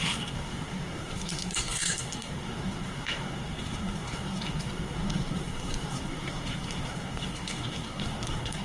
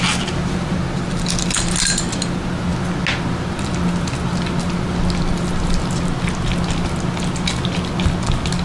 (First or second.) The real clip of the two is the second